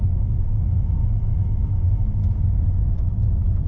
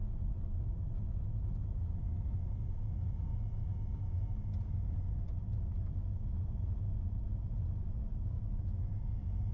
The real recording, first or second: second